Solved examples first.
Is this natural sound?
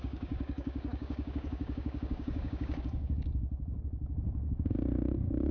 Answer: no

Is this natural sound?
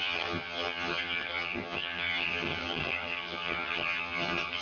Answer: no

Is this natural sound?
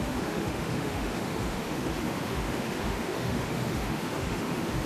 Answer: no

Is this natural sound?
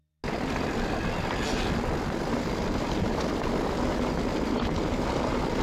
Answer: yes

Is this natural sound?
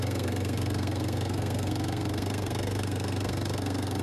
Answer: no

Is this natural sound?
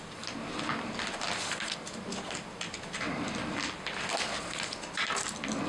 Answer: yes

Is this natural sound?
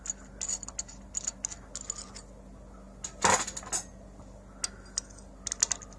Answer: yes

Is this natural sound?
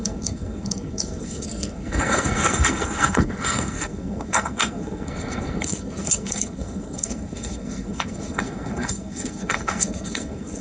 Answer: no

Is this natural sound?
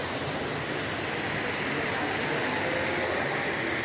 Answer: yes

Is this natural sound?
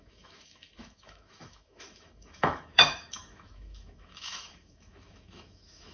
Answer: no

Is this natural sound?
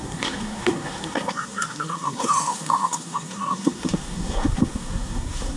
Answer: no